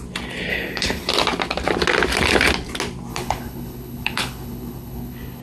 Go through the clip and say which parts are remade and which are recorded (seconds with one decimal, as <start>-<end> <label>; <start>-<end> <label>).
0.0-0.5 recorded; 0.5-1.1 remade; 1.1-3.1 recorded; 3.1-5.4 remade

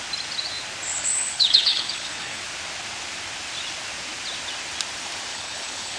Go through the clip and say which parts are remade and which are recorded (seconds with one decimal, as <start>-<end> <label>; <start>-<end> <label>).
0.0-0.9 recorded; 0.9-2.4 remade; 2.4-5.3 recorded; 5.3-6.0 remade

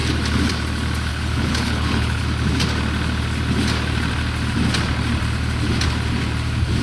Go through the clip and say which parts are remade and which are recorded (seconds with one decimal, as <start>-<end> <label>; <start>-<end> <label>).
0.0-1.1 recorded; 1.1-2.2 remade; 2.2-6.8 recorded

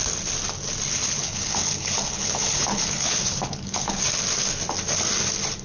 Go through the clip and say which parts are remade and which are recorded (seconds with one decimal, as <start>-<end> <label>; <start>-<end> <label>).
0.0-1.0 recorded; 1.0-4.0 remade; 4.0-5.6 recorded

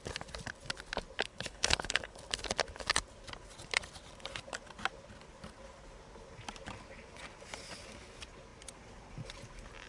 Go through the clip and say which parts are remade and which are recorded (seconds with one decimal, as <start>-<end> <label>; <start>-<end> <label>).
0.0-1.3 recorded; 1.3-2.2 remade; 2.2-9.9 recorded